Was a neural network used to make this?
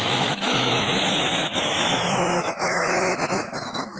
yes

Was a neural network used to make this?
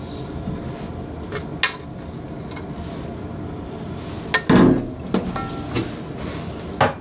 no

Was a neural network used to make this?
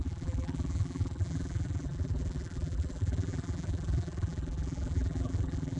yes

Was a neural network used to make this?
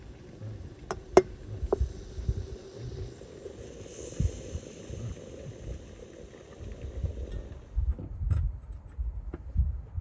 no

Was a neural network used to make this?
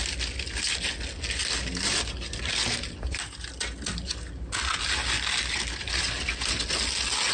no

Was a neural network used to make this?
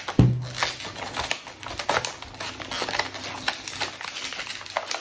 no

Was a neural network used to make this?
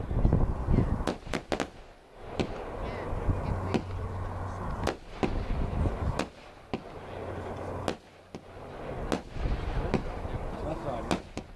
no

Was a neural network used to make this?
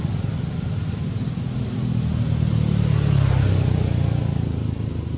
no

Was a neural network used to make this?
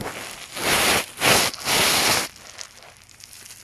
no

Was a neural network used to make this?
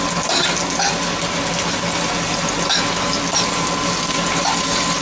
no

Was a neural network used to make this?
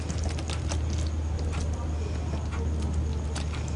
no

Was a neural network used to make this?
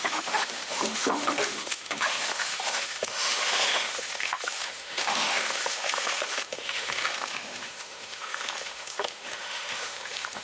yes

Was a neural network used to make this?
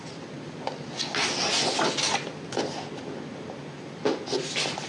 no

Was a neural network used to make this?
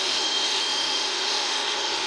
yes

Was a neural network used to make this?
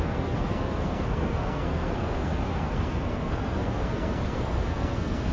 yes